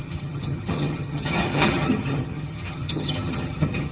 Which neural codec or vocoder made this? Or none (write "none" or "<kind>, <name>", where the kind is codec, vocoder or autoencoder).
vocoder, HiFi-GAN